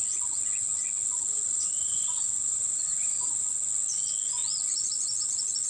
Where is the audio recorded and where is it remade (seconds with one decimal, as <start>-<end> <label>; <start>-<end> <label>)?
0.0-1.3 recorded; 1.3-3.4 remade; 3.4-5.7 recorded